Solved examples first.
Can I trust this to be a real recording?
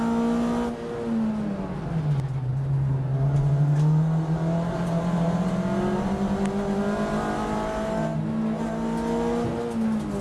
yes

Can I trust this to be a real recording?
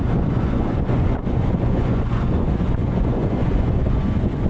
no